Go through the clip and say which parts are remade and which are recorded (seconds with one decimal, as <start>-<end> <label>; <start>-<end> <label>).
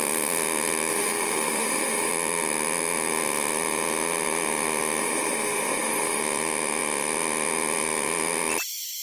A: 0.0-0.9 recorded; 0.9-2.1 remade; 2.1-5.0 recorded; 5.0-6.2 remade; 6.2-9.0 recorded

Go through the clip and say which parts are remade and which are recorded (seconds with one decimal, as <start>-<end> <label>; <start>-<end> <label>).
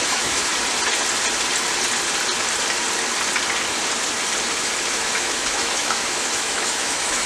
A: 0.0-0.5 remade; 0.5-4.9 recorded; 4.9-7.3 remade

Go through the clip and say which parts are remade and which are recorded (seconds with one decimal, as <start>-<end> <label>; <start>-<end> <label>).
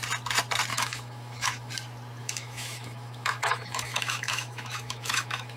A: 0.0-0.7 recorded; 0.7-1.7 remade; 1.7-2.2 recorded; 2.2-5.6 remade